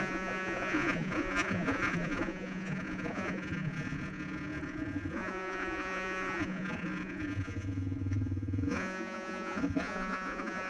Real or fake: fake